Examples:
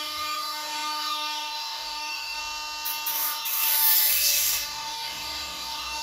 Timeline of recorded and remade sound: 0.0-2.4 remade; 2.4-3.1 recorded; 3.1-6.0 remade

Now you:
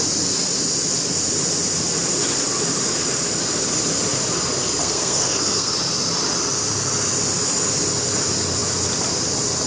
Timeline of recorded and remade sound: 0.0-4.8 recorded; 4.8-5.7 remade; 5.7-9.7 recorded

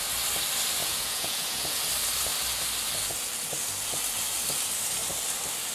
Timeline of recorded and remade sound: 0.0-0.8 recorded; 0.8-1.8 remade; 1.8-5.7 recorded

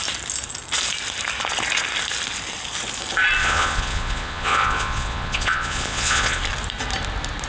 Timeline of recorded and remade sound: 0.0-3.4 recorded; 3.4-6.4 remade; 6.4-7.5 recorded

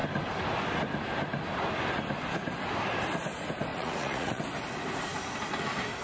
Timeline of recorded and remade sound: 0.0-3.7 recorded; 3.7-4.4 remade; 4.4-6.0 recorded

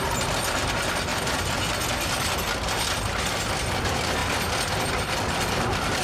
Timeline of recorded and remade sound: 0.0-6.0 recorded